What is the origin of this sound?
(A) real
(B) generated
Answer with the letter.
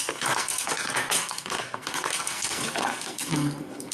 B